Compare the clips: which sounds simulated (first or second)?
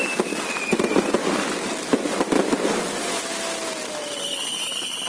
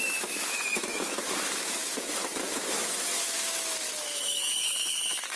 second